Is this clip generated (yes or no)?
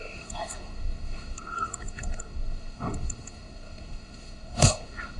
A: yes